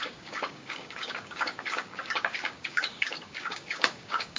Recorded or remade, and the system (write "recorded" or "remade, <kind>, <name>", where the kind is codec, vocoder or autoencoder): remade, codec, DAC